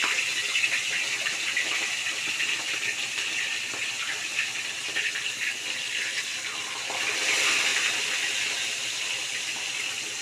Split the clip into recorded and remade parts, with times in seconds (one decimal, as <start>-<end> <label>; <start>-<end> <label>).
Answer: 0.0-10.2 recorded